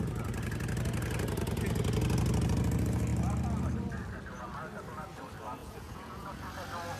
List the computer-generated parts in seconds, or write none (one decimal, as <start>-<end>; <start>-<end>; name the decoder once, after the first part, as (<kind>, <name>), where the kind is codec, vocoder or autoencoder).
5.6-6.5 (vocoder, Vocos)